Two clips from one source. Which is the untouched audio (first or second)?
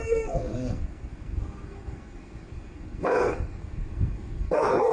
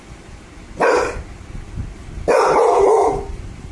second